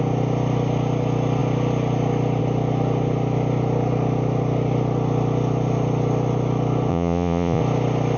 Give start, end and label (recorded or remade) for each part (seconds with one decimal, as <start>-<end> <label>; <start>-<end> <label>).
0.0-6.9 recorded; 6.9-7.6 remade; 7.6-8.2 recorded